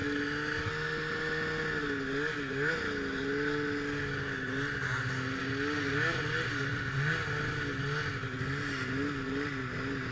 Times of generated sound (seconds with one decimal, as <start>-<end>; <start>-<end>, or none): none